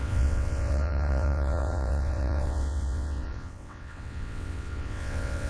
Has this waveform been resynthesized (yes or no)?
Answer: yes